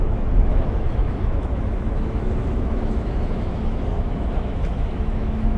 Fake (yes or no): yes